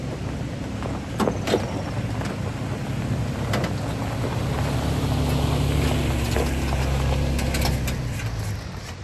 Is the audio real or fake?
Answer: real